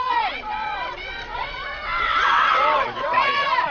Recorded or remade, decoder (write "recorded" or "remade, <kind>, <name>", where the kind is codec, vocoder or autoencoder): remade, vocoder, WaveNeXt